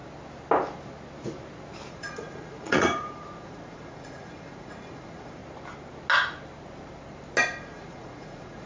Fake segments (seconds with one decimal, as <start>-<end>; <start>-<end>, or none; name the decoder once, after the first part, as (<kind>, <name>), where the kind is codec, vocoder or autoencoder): 1.9-5.4 (vocoder, Vocos); 7.6-8.7